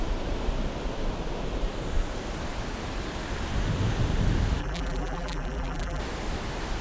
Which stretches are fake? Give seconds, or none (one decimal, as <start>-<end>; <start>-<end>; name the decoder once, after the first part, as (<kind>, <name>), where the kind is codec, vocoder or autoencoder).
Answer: 4.6-6.0 (vocoder, BigVGAN v2)